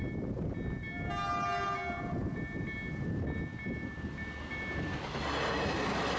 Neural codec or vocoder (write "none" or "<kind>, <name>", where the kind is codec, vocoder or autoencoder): none